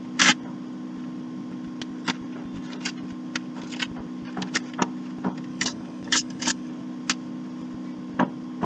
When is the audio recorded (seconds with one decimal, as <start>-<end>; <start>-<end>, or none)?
0.0-5.5; 6.7-8.6